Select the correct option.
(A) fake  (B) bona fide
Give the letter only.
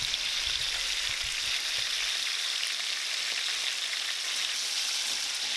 B